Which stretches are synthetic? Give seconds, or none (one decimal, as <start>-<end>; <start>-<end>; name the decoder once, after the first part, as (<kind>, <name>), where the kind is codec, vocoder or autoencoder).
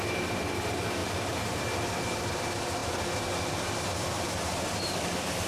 1.0-1.6 (vocoder, BigVGAN v2)